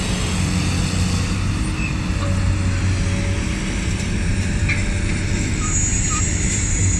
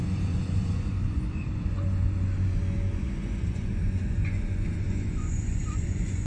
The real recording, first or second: first